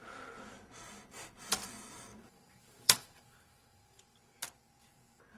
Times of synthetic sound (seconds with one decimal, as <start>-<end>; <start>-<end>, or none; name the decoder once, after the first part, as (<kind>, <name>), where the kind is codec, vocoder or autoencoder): 2.1-4.0 (vocoder, BigVGAN v2)